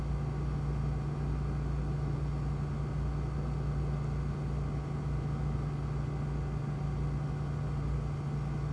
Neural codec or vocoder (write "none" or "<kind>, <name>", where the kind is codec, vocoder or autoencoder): none